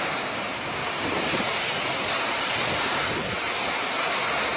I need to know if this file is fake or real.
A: real